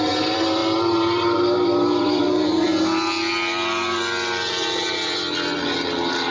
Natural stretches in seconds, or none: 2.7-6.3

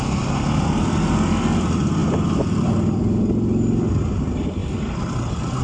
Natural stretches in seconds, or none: 0.0-2.0; 3.0-5.6

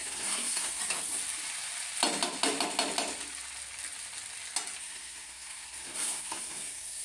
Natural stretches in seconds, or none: 0.8-4.8

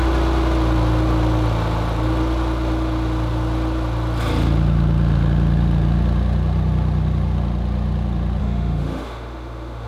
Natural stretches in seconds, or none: 0.0-8.4

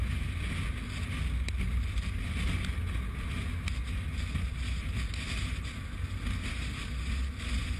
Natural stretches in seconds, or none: 0.0-7.8